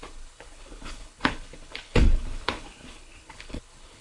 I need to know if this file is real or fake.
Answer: fake